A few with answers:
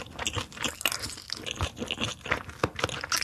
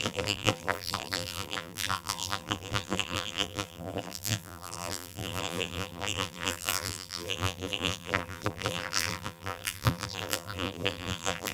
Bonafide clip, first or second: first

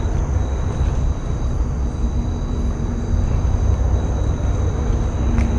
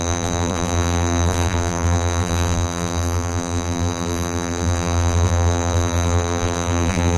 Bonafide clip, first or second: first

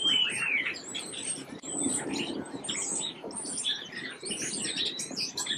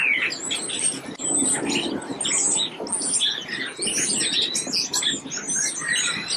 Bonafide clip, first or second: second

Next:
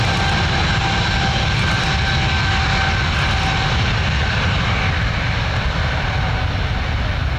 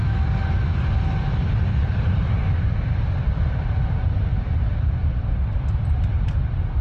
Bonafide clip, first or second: first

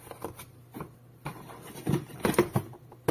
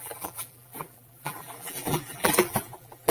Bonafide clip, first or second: first